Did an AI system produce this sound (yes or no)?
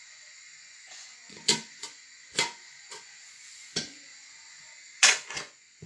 yes